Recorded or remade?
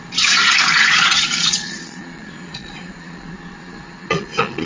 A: remade